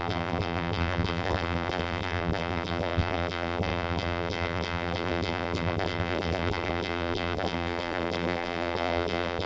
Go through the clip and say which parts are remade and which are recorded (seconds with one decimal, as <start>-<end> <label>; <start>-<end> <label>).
0.0-9.5 remade